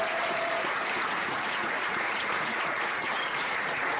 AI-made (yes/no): yes